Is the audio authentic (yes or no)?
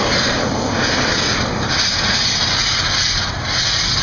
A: yes